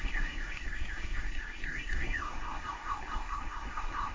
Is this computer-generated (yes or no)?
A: yes